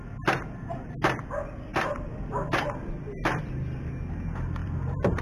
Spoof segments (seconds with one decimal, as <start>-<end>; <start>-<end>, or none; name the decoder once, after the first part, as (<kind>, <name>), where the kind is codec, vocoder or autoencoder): 1.7-3.5 (vocoder, BigVGAN v2); 4.6-5.2